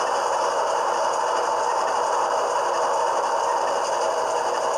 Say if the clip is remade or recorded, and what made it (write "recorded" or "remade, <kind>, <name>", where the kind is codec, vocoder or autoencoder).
recorded